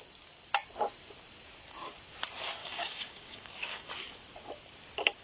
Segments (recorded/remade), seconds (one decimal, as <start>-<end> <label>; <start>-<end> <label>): 0.0-2.6 recorded; 2.6-3.9 remade; 3.9-5.2 recorded